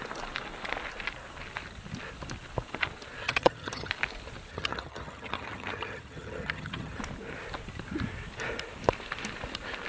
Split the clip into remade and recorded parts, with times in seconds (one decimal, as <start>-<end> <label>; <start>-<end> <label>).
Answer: 0.0-3.2 recorded; 3.2-3.9 remade; 3.9-4.5 recorded; 4.5-7.0 remade; 7.0-9.9 recorded